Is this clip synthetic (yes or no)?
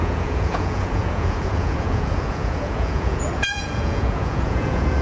yes